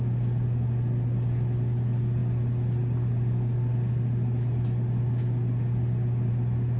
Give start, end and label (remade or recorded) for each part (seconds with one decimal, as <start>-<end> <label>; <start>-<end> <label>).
0.0-6.8 recorded